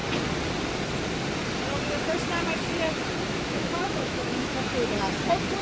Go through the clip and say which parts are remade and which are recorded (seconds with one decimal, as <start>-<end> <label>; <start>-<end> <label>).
0.0-3.4 recorded; 3.4-4.7 remade; 4.7-5.6 recorded